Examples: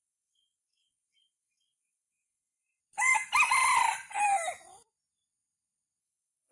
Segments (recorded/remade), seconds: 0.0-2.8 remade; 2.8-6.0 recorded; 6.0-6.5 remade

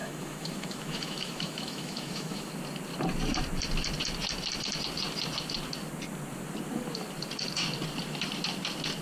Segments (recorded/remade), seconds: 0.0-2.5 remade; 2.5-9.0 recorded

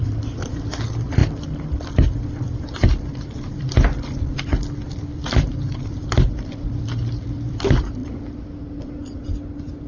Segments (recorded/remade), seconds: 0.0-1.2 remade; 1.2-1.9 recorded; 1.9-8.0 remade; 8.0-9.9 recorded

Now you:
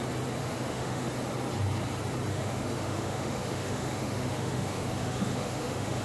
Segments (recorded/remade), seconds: 0.0-0.4 recorded; 0.4-1.1 remade; 1.1-2.3 recorded; 2.3-6.0 remade

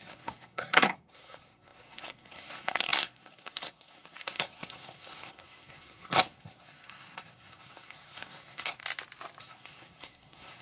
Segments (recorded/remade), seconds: 0.0-8.8 remade; 8.8-9.4 recorded; 9.4-10.6 remade

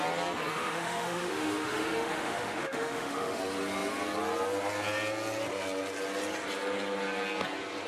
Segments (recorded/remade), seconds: 0.0-0.5 recorded; 0.5-3.4 remade; 3.4-7.9 recorded

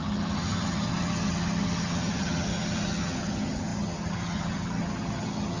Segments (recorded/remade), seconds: 0.0-5.6 remade

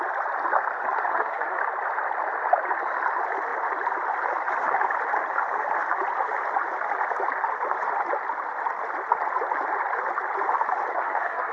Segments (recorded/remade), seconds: 0.0-1.1 recorded; 1.1-1.6 remade; 1.6-10.9 recorded; 10.9-11.5 remade